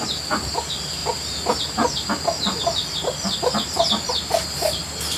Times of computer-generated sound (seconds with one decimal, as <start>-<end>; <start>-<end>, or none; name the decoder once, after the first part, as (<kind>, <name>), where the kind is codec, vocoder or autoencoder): none